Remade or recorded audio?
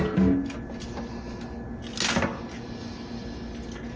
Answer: recorded